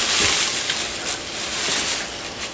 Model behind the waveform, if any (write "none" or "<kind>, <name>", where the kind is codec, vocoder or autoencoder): none